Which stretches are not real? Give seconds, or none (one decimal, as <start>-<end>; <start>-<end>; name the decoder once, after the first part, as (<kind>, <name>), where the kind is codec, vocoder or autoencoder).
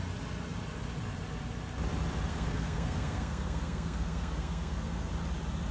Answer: 2.3-5.1 (codec, SNAC)